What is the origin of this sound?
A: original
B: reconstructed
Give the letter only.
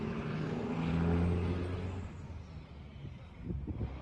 A